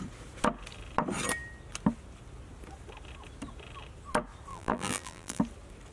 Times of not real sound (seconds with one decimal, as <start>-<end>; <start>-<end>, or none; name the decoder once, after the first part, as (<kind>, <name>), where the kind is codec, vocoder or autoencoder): 4.5-5.4 (vocoder, BigVGAN v2)